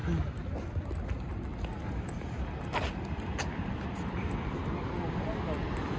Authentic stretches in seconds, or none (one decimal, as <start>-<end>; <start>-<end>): 0.0-6.0